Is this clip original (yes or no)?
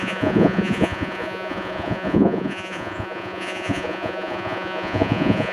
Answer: no